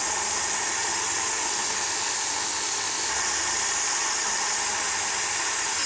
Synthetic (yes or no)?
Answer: no